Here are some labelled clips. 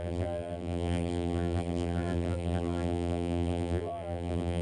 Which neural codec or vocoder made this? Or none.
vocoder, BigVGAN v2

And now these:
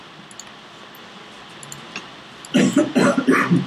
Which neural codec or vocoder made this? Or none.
none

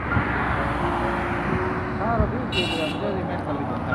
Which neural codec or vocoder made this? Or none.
none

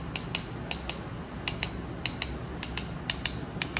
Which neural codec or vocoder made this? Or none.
none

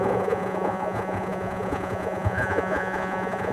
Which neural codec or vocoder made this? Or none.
vocoder, Vocos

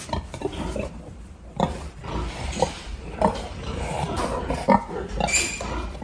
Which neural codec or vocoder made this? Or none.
vocoder, BigVGAN v2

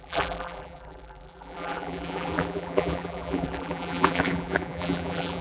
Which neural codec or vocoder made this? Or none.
vocoder, BigVGAN v2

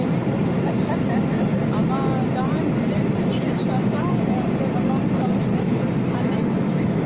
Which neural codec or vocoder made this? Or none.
none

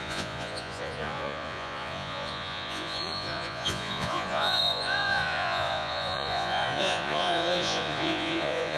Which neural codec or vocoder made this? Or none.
vocoder, Vocos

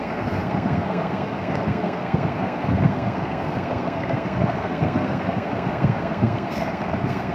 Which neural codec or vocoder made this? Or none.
codec, SNAC